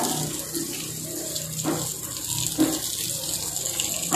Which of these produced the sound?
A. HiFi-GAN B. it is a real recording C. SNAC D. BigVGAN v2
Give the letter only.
B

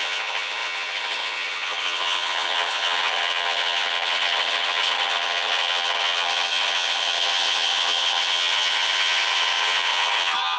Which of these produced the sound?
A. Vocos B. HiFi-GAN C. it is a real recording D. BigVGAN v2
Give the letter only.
B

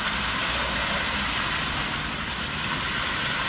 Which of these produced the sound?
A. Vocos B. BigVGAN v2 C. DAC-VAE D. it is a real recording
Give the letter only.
D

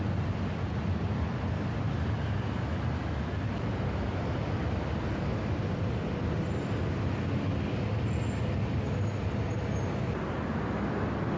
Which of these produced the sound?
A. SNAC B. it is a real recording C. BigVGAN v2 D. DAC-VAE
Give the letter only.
B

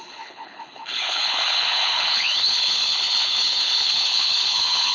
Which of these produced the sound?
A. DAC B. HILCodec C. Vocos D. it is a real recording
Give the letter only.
B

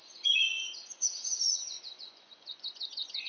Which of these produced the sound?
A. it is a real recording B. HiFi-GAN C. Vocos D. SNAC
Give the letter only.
C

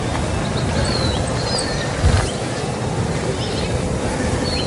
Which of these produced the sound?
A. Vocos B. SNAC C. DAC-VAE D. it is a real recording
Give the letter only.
D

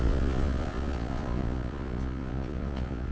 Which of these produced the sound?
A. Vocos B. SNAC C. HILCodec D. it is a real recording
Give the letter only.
A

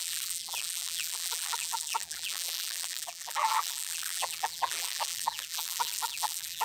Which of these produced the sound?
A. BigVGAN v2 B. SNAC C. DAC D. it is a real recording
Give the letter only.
A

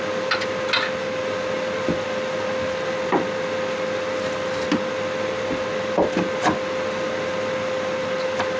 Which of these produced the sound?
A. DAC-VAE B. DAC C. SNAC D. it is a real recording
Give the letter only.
D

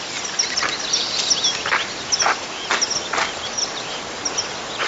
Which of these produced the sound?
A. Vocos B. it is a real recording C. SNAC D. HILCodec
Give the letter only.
B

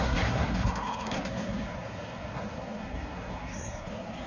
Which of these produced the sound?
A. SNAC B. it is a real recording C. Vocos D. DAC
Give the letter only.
A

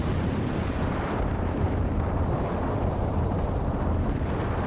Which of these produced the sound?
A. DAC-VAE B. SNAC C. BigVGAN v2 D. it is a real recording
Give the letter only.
C